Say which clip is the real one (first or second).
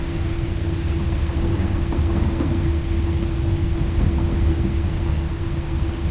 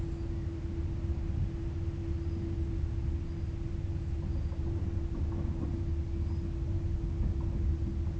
second